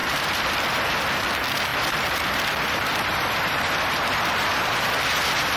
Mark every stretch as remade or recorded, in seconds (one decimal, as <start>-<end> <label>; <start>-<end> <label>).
0.0-0.9 remade; 0.9-1.7 recorded; 1.7-4.3 remade; 4.3-5.6 recorded